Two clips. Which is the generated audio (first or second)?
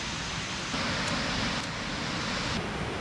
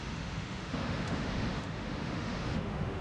second